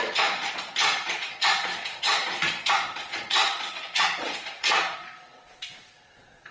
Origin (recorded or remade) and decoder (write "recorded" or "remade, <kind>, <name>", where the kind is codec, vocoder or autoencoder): remade, vocoder, Vocos